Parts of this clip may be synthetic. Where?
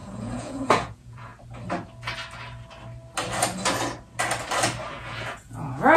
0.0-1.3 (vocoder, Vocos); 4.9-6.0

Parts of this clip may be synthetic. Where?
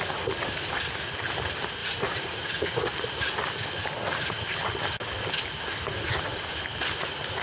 1.8-2.9 (vocoder, Vocos)